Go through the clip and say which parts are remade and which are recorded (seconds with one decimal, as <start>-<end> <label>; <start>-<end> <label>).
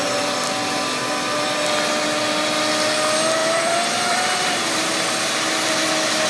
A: 0.0-3.4 recorded; 3.4-5.4 remade; 5.4-6.3 recorded